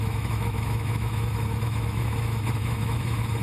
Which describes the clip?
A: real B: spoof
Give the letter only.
B